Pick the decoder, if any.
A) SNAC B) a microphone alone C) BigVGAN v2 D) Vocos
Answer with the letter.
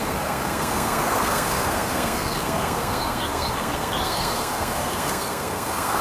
A